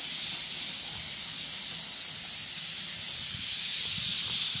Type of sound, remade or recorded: recorded